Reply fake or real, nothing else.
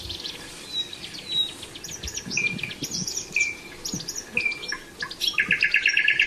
real